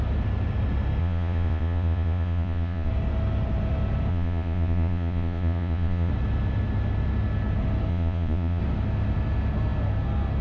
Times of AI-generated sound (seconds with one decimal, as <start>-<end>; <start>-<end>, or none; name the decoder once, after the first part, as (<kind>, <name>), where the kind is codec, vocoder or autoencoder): 1.0-2.9 (vocoder, Vocos); 4.1-6.1; 7.9-8.6